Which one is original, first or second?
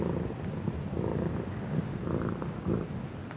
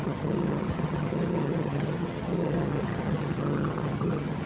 first